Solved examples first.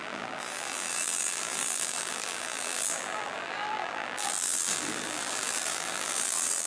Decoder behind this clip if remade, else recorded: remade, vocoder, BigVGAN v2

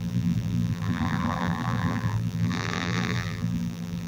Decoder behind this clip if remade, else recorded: remade, vocoder, BigVGAN v2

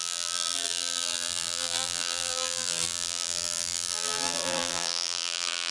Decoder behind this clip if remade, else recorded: remade, vocoder, BigVGAN v2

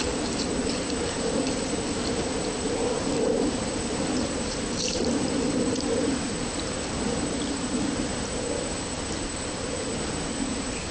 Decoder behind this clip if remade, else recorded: remade, vocoder, BigVGAN v2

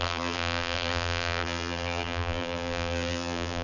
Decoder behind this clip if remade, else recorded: remade, vocoder, BigVGAN v2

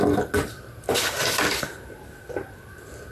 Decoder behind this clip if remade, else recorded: recorded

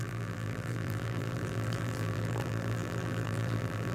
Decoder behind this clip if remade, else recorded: remade, vocoder, BigVGAN v2